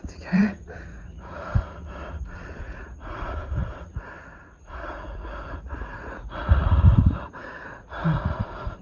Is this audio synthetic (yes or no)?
yes